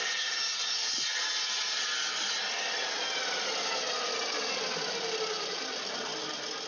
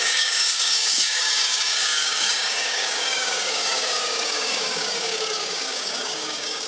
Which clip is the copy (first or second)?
second